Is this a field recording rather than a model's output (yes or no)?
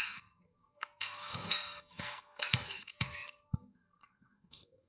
no